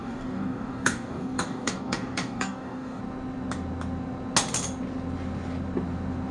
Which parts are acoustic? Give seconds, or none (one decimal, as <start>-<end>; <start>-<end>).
3.0-6.3